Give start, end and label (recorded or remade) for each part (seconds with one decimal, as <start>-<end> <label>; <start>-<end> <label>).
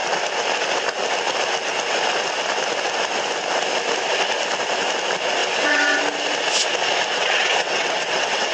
0.0-5.4 recorded; 5.4-6.0 remade; 6.0-7.1 recorded; 7.1-8.5 remade